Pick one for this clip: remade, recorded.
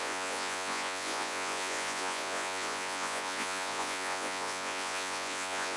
remade